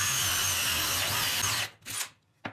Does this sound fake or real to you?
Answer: real